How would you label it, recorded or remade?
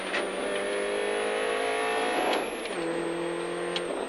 recorded